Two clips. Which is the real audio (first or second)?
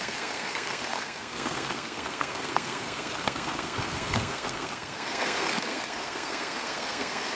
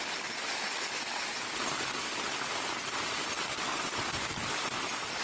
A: second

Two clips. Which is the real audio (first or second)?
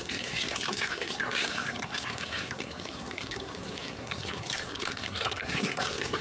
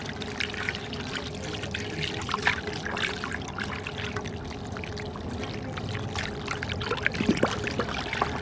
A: second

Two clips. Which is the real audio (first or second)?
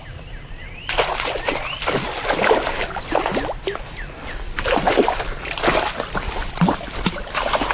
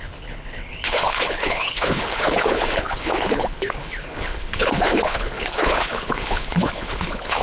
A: first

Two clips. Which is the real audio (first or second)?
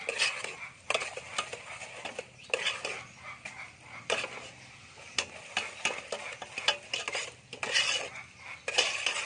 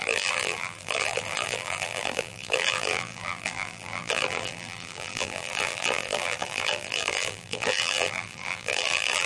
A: first